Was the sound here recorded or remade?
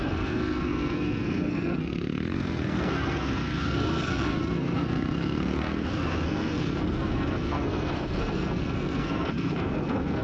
remade